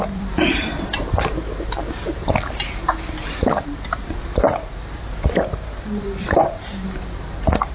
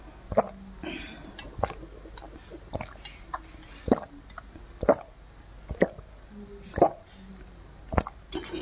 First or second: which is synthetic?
first